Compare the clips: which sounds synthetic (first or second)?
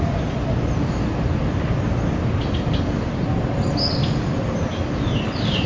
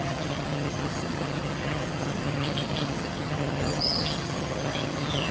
second